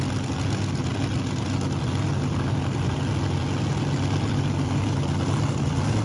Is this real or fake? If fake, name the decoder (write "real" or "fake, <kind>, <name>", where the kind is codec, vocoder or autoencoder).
real